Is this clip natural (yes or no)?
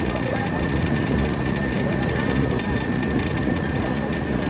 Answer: no